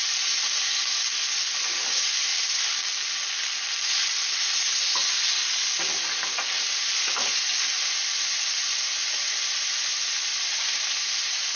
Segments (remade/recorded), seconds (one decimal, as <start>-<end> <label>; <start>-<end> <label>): 0.0-11.6 recorded